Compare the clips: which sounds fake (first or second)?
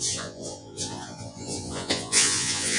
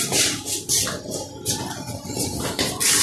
first